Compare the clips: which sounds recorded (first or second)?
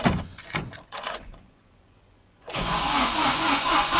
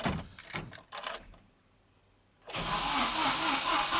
second